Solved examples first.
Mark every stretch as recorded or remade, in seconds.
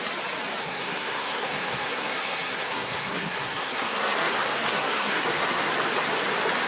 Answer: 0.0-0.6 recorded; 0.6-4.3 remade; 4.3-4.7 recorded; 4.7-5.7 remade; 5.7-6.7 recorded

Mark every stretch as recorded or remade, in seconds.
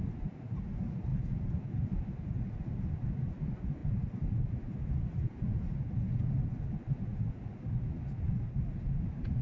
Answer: 0.0-9.4 recorded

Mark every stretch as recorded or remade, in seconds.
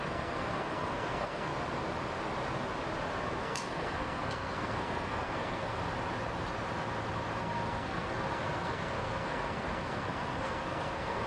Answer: 0.0-1.5 remade; 1.5-3.4 recorded; 3.4-5.8 remade; 5.8-7.4 recorded; 7.4-11.3 remade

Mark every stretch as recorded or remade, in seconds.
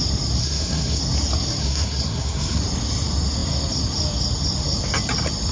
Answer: 0.0-0.4 recorded; 0.4-1.0 remade; 1.0-1.6 recorded; 1.6-2.6 remade; 2.6-5.5 recorded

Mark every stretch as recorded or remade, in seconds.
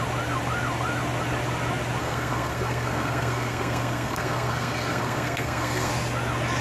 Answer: 0.0-2.0 recorded; 2.0-5.9 remade; 5.9-6.6 recorded